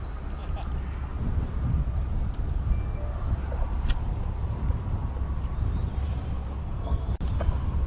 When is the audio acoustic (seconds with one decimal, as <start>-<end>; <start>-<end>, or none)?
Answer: 0.0-6.6; 7.1-7.9